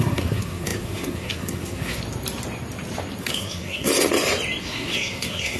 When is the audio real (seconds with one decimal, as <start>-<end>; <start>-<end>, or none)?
2.0-3.2; 3.9-4.6